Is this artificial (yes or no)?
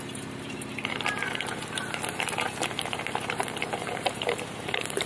yes